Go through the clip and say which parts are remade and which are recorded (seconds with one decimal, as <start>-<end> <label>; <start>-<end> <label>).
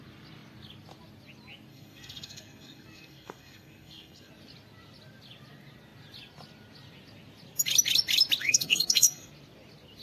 0.0-1.7 recorded; 1.7-4.3 remade; 4.3-8.4 recorded; 8.4-9.3 remade; 9.3-10.0 recorded